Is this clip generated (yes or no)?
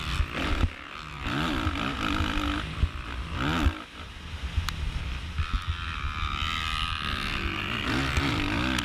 no